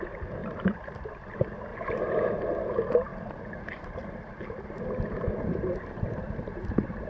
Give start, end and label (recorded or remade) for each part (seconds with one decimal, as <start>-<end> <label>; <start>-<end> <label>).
0.0-0.4 recorded; 0.4-1.1 remade; 1.1-1.7 recorded; 1.7-2.3 remade; 2.3-3.1 recorded; 3.1-7.1 remade